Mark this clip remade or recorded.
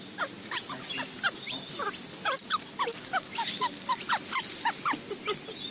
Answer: recorded